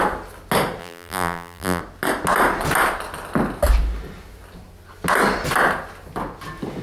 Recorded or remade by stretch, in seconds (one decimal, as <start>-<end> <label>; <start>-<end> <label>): 0.0-0.8 recorded; 0.8-1.8 remade; 1.8-6.8 recorded